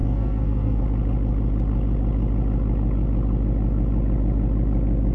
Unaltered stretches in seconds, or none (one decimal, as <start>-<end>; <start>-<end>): 0.8-5.1